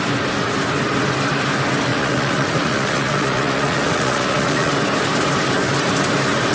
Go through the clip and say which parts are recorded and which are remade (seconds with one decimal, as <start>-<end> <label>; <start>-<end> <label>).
0.0-1.9 recorded; 1.9-4.7 remade; 4.7-6.5 recorded